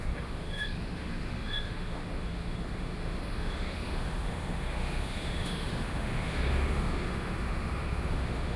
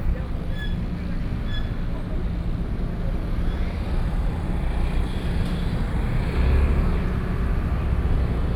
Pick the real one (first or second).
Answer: second